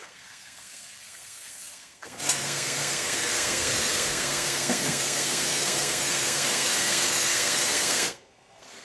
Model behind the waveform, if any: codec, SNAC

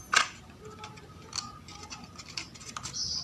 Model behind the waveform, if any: none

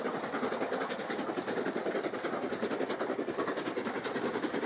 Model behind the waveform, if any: none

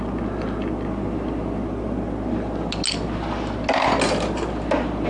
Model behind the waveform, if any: none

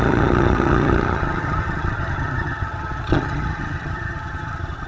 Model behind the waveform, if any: vocoder, HiFi-GAN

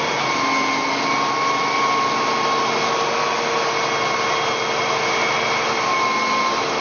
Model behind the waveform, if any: none